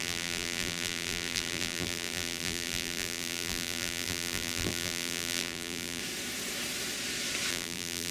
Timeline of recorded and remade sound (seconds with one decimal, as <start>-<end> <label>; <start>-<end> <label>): 0.0-6.0 remade; 6.0-7.5 recorded; 7.5-8.1 remade